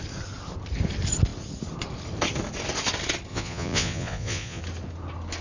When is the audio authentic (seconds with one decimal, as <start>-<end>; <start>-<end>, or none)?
0.0-3.3; 4.6-5.4